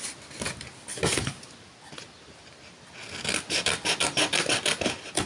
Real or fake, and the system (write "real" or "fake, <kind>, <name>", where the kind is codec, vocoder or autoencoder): real